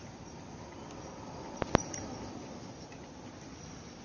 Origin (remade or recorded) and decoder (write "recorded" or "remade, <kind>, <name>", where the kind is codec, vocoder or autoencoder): recorded